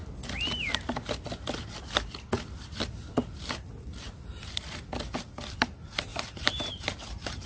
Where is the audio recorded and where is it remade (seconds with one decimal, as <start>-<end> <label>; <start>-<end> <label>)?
0.0-6.1 recorded; 6.1-6.7 remade; 6.7-7.5 recorded